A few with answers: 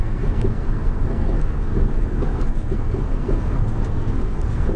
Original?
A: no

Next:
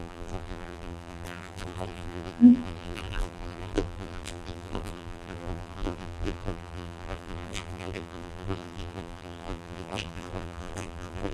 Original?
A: no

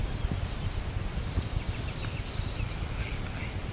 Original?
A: yes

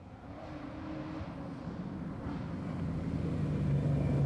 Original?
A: yes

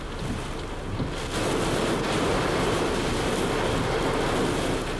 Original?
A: yes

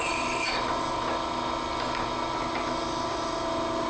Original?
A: yes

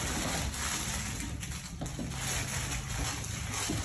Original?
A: yes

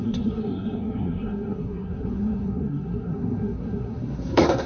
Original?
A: no